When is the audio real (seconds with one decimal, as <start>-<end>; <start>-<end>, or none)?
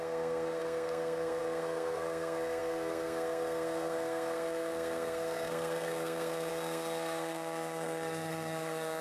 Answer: none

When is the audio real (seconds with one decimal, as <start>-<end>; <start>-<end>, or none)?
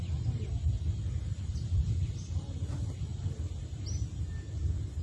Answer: 0.0-5.0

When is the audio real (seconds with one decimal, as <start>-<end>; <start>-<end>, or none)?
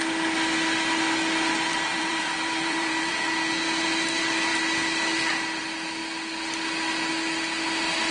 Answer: 0.0-1.7; 3.1-8.1